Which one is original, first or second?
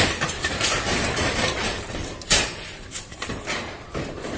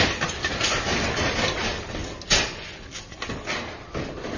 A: second